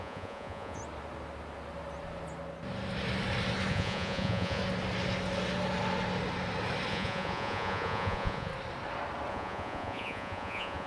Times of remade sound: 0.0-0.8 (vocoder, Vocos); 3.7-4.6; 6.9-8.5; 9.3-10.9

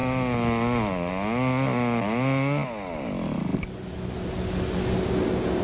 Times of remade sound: none

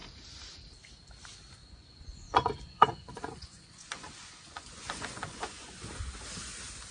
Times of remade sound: 1.6-5.7 (vocoder, Vocos)

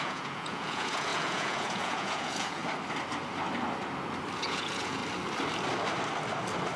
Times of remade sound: 0.0-2.6 (vocoder, Vocos); 4.4-5.0

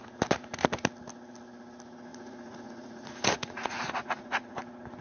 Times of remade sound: 2.1-4.6 (vocoder, Vocos)

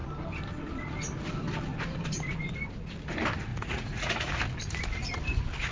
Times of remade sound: 3.5-4.3 (vocoder, Vocos)

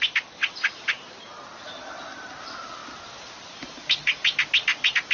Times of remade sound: none